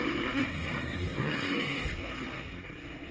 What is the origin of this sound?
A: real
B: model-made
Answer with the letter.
B